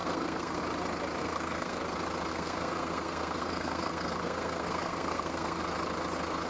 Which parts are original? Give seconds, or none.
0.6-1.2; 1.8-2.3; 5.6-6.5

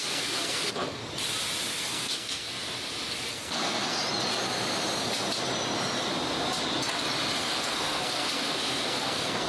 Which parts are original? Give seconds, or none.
1.0-1.7; 2.5-3.3; 4.0-7.4

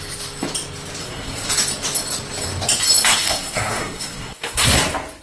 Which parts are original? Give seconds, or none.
0.0-1.0; 1.5-3.2; 4.8-5.2